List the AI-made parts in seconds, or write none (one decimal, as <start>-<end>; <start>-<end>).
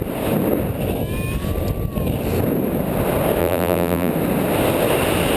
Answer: 3.4-4.1